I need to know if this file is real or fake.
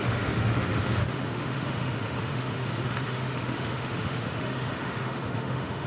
fake